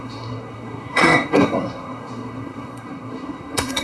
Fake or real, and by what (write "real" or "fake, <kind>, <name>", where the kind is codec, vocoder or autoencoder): fake, codec, SNAC